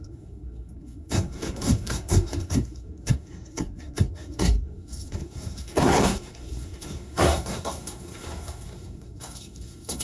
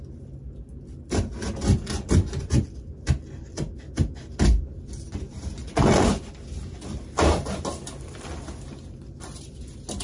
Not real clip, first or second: first